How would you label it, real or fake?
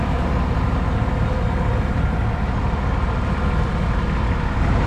real